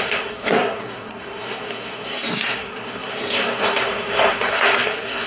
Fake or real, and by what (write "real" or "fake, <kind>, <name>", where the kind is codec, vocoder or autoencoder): fake, codec, SNAC